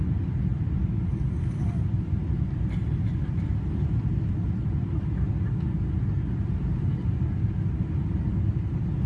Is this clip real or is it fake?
real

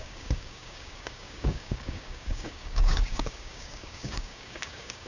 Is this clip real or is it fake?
fake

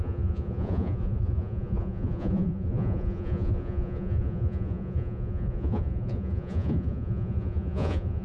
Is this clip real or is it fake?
fake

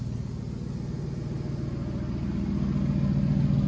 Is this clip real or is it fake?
real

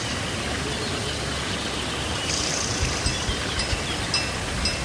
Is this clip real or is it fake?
real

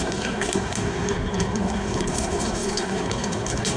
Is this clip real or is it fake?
fake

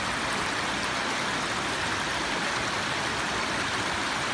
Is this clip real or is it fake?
real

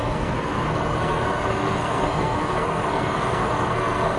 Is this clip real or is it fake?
fake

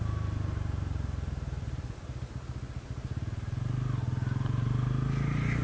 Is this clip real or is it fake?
real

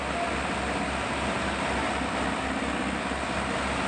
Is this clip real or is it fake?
real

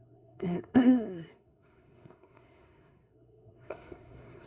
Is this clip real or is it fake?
fake